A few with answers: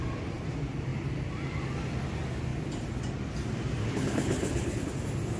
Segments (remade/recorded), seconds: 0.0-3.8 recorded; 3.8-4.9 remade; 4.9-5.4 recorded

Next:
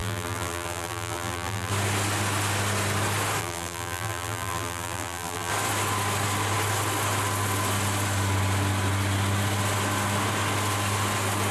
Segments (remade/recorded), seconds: 0.0-1.7 remade; 1.7-3.4 recorded; 3.4-5.5 remade; 5.5-11.5 recorded

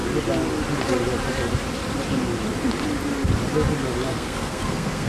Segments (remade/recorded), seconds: 0.0-4.1 recorded; 4.1-5.1 remade

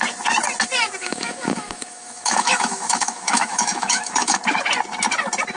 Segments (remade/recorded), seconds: 0.0-1.0 recorded; 1.0-4.4 remade; 4.4-5.6 recorded

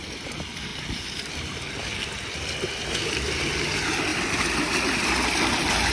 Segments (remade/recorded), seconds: 0.0-4.1 recorded; 4.1-5.9 remade